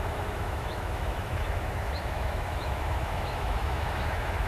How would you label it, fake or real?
fake